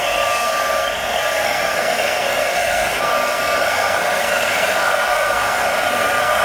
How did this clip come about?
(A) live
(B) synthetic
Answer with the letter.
B